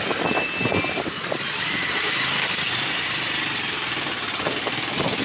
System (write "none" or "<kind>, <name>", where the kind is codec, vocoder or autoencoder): none